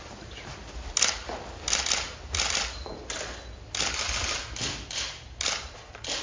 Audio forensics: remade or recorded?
recorded